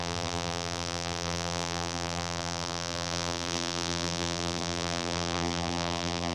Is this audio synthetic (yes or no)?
yes